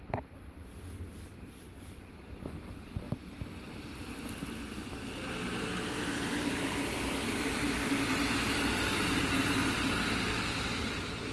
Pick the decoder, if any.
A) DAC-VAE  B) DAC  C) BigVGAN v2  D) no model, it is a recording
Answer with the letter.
D